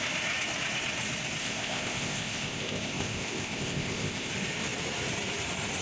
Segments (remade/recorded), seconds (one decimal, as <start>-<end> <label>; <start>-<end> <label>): 0.0-1.4 recorded; 1.4-4.3 remade; 4.3-5.8 recorded